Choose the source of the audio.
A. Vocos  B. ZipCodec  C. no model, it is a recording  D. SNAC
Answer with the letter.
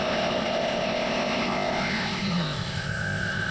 B